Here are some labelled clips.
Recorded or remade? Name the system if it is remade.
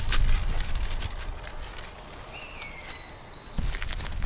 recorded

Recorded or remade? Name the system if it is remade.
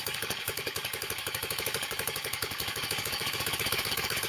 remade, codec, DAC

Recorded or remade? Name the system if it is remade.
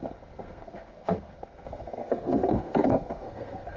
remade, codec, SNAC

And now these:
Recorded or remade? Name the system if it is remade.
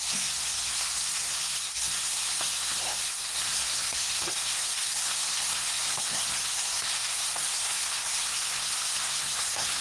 remade, codec, SNAC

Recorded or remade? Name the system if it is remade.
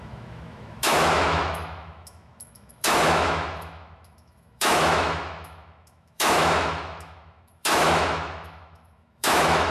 remade, autoencoder, DAC-VAE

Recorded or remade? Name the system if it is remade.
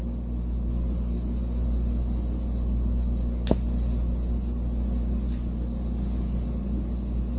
recorded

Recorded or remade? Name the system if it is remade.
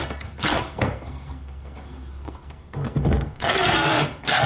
remade, codec, SNAC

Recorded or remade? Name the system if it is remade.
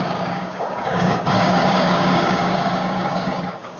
remade, codec, DAC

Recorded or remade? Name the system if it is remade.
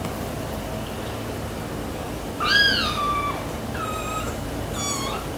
recorded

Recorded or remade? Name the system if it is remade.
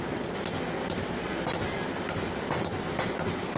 recorded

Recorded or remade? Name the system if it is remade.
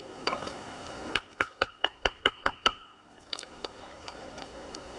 remade, codec, SNAC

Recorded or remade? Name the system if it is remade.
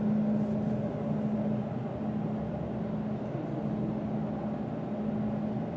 recorded